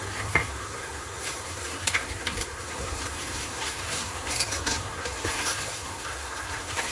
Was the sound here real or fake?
fake